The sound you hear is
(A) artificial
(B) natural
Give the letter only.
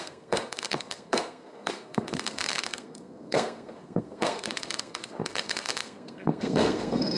A